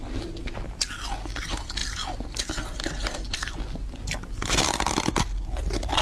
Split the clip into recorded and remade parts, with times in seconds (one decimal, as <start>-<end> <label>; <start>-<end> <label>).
0.0-6.0 recorded